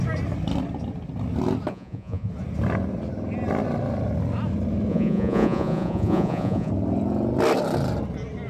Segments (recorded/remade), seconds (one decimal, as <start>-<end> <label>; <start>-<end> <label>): 0.0-1.7 recorded; 1.7-2.3 remade; 2.3-4.9 recorded; 4.9-6.7 remade; 6.7-8.5 recorded